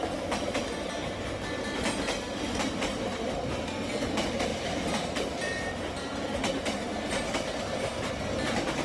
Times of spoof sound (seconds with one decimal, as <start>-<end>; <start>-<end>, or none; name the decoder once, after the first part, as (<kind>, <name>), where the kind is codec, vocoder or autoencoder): 4.5-8.1 (vocoder, BigVGAN v2)